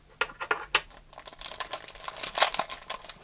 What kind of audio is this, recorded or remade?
recorded